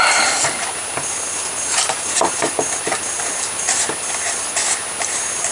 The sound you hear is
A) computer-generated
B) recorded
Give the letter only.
B